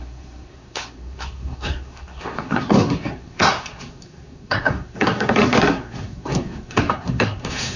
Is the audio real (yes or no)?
no